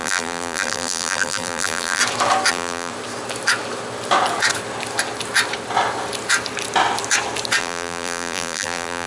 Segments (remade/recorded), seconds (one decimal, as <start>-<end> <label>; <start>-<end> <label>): 0.0-2.0 remade; 2.0-2.5 recorded; 2.5-2.9 remade; 2.9-7.6 recorded; 7.6-9.1 remade